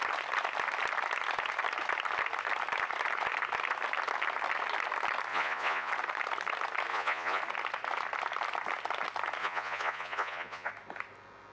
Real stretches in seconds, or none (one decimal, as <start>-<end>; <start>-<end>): 0.0-5.3; 5.9-6.9; 7.4-9.4; 10.7-11.5